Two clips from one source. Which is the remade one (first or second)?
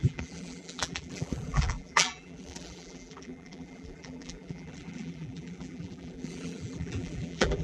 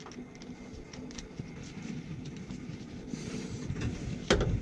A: first